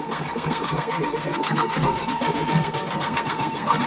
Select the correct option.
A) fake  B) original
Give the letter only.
A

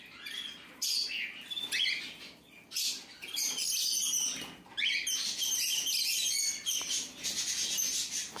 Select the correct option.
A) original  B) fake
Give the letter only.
A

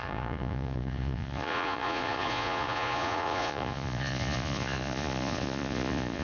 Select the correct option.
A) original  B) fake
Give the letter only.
B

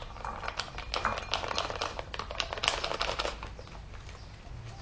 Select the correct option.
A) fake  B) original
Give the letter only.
B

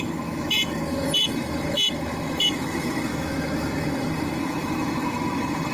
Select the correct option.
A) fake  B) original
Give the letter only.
A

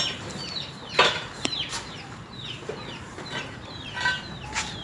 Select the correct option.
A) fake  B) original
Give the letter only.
A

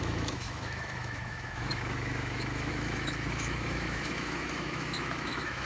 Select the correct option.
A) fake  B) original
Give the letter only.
A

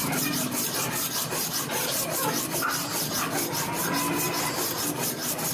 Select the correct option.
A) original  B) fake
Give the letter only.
B